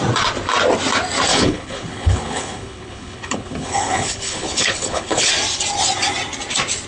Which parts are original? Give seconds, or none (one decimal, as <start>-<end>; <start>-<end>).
0.0-1.3; 5.3-6.9